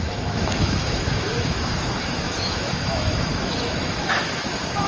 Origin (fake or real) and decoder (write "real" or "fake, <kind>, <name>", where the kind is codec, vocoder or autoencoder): fake, autoencoder, DAC-VAE